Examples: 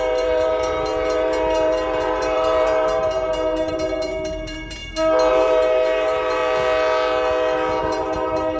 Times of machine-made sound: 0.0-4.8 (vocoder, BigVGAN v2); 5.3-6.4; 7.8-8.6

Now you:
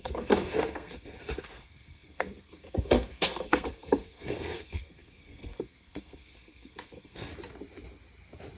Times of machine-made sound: 0.0-7.3 (codec, SNAC)

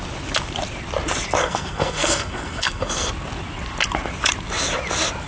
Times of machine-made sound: 1.4-3.1 (codec, SNAC)

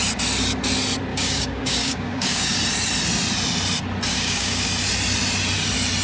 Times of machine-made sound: 1.1-2.6 (codec, DAC); 4.1-4.7

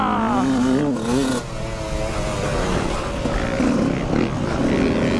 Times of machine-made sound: none

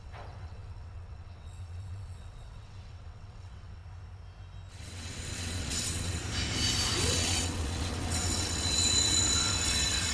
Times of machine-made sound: 0.0-3.8 (vocoder, WaveNeXt); 4.7-6.2; 7.0-10.1